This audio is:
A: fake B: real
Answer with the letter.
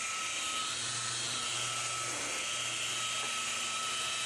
B